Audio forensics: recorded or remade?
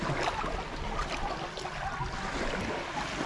recorded